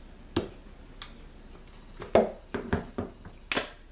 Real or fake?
real